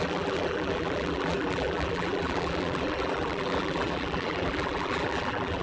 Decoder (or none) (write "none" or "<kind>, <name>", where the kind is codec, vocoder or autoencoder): vocoder, BigVGAN v2